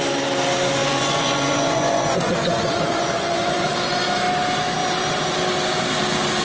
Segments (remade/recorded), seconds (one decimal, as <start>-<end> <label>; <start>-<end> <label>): 0.0-0.8 recorded; 0.8-3.7 remade; 3.7-6.4 recorded